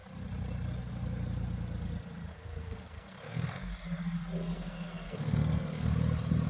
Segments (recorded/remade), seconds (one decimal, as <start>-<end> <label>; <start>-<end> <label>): 0.0-2.3 recorded; 2.3-3.7 remade; 3.7-4.5 recorded; 4.5-5.9 remade; 5.9-6.5 recorded